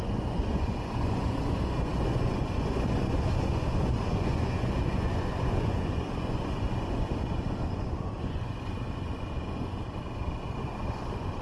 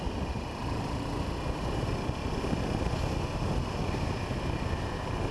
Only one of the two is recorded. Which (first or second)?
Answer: second